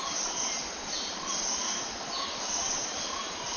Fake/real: real